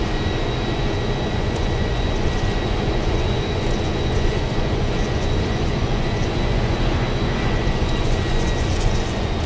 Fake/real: fake